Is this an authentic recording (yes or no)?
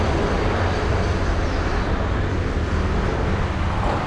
yes